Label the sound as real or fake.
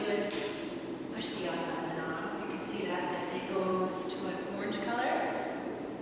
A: fake